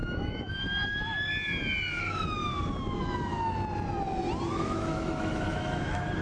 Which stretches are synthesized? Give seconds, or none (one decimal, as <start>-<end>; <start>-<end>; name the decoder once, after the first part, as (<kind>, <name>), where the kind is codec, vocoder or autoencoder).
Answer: 0.0-1.3 (autoencoder, DAC-VAE); 2.0-2.4; 4.5-6.2